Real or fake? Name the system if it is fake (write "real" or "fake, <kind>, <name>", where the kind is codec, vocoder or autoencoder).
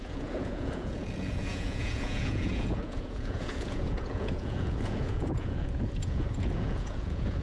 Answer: fake, vocoder, Vocos